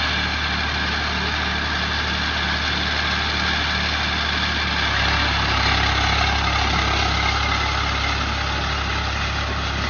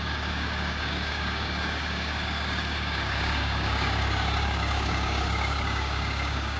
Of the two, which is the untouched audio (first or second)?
first